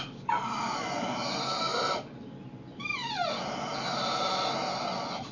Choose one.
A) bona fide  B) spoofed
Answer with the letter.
A